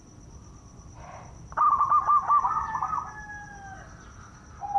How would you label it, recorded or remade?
recorded